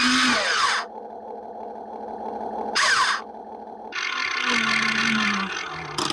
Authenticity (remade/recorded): recorded